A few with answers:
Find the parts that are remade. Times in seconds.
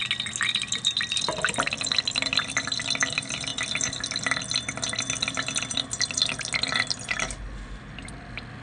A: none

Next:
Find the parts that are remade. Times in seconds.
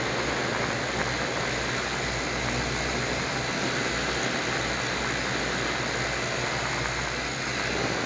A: none